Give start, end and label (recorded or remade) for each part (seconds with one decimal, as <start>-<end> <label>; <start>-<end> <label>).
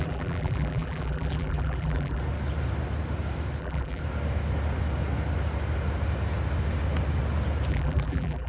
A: 0.0-2.2 remade; 2.2-3.6 recorded; 3.6-4.0 remade; 4.0-7.7 recorded; 7.7-8.5 remade